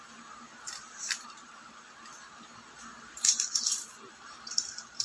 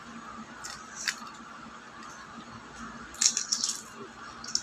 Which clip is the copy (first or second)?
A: first